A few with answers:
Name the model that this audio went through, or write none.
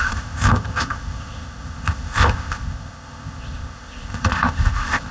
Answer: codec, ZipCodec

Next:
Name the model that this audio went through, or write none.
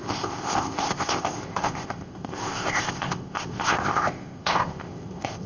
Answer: codec, ZipCodec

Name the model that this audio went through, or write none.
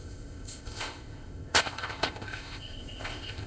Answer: codec, ZipCodec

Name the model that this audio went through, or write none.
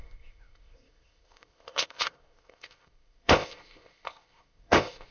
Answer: codec, ZipCodec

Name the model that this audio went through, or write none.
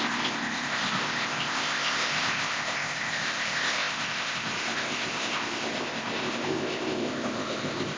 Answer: codec, ZipCodec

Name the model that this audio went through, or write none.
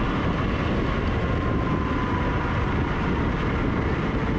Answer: none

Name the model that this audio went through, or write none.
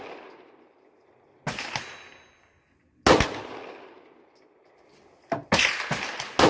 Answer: none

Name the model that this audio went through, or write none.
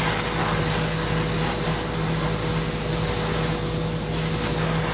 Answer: none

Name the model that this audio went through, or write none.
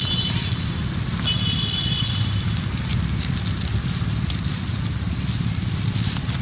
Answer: none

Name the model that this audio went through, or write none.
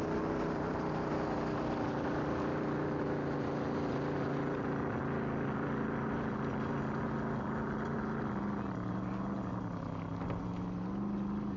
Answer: none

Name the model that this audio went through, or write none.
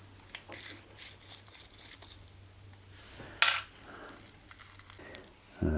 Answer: none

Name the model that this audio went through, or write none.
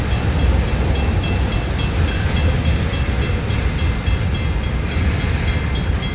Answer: none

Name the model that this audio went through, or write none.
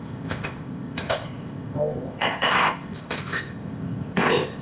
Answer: codec, ZipCodec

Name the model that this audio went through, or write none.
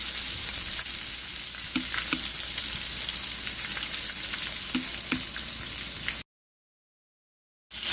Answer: none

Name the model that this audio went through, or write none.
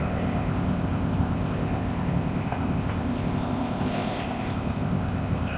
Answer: codec, ZipCodec